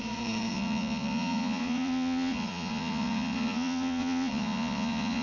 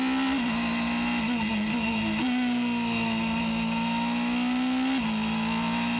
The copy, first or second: first